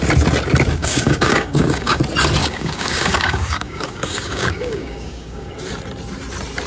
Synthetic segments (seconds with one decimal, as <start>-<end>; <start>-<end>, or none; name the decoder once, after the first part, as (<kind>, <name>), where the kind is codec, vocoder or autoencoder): 0.8-2.0 (codec, DAC); 2.4-5.5